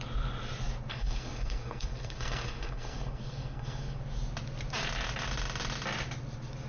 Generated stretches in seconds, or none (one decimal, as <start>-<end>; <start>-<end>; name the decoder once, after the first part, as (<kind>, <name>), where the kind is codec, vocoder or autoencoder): 0.9-4.0 (codec, SNAC)